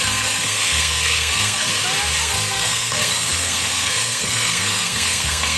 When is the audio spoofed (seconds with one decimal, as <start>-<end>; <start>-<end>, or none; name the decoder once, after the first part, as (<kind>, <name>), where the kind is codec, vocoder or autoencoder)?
0.0-1.7 (codec, SNAC); 2.2-5.6